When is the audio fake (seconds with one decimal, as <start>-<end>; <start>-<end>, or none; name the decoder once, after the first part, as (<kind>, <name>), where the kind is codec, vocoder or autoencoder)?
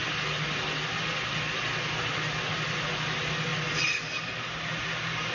none